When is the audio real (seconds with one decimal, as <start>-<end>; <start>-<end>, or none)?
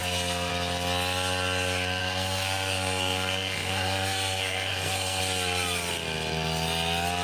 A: 0.5-2.0; 5.2-7.2